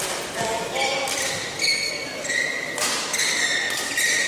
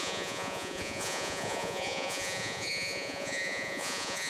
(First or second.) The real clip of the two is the first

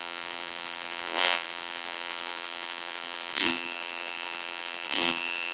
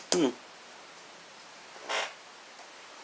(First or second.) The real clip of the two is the second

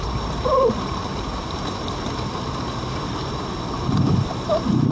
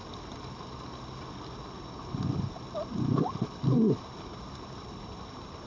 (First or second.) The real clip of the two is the second